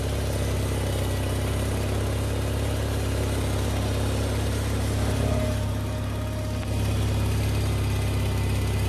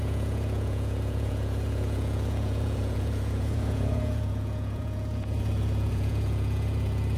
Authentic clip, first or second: first